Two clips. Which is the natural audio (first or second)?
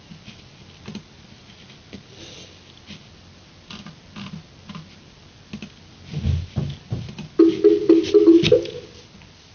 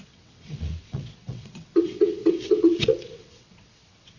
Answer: first